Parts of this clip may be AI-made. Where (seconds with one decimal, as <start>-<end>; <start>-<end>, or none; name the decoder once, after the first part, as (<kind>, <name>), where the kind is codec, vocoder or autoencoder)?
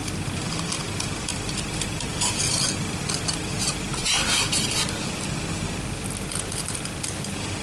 none